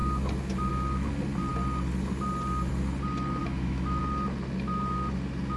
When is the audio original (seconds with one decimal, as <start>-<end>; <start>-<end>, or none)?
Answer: 0.0-3.4; 4.0-5.6